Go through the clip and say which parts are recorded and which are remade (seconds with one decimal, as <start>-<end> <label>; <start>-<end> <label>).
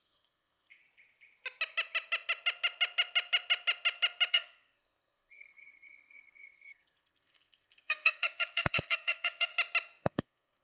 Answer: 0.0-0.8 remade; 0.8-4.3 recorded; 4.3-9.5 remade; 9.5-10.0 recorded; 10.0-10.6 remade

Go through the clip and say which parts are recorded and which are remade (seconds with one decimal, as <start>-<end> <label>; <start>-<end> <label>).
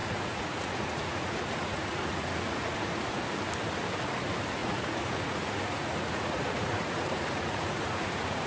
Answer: 0.0-3.2 remade; 3.2-4.6 recorded; 4.6-8.5 remade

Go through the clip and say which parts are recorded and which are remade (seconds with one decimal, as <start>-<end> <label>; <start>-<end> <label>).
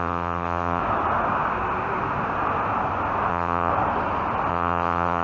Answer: 0.0-0.8 remade; 0.8-3.3 recorded; 3.3-3.7 remade; 3.7-4.5 recorded; 4.5-5.2 remade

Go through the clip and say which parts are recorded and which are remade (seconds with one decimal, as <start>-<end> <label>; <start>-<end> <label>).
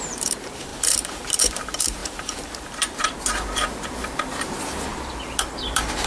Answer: 0.0-4.9 remade; 4.9-5.4 recorded; 5.4-6.1 remade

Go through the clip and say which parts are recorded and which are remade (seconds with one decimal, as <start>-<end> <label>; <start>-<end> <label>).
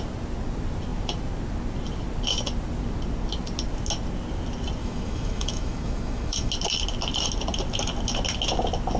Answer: 0.0-4.8 recorded; 4.8-6.5 remade; 6.5-9.0 recorded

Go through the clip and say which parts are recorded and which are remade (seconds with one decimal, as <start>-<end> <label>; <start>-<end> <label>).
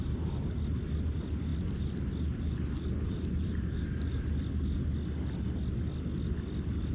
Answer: 0.0-1.5 recorded; 1.5-4.5 remade; 4.5-6.9 recorded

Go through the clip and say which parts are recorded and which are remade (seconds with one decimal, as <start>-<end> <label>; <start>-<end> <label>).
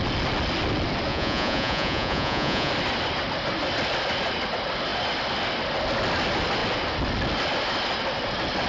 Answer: 0.0-1.1 recorded; 1.1-2.7 remade; 2.7-8.7 recorded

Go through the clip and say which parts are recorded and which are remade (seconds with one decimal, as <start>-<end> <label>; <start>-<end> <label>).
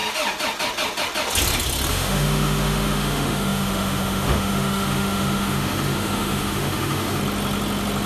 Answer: 0.0-1.9 recorded; 1.9-7.2 remade; 7.2-8.1 recorded